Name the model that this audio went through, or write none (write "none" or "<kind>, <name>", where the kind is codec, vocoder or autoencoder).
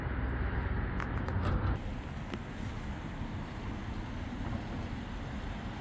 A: none